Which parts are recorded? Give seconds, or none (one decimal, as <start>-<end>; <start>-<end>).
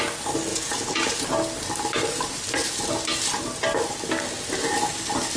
0.0-0.5; 1.2-5.4